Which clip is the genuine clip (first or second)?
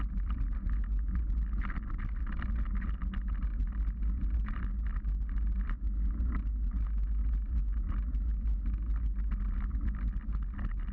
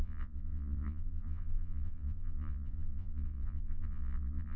first